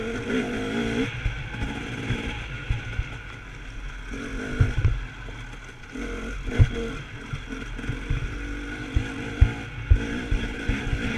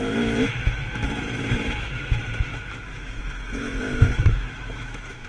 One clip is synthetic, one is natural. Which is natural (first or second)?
first